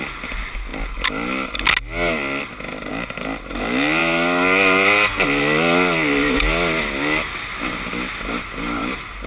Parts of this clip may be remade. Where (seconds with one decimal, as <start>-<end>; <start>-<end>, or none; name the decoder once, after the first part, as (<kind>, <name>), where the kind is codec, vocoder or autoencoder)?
none